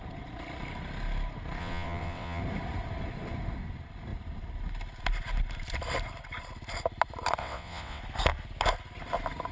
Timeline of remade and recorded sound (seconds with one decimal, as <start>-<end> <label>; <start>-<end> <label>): 0.0-1.6 recorded; 1.6-2.4 remade; 2.4-7.4 recorded; 7.4-8.0 remade; 8.0-9.5 recorded